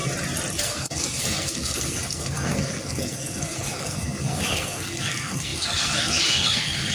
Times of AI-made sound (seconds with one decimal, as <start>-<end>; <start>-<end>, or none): 0.6-6.9